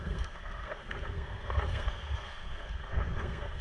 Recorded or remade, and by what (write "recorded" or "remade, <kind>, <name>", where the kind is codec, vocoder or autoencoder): remade, codec, SNAC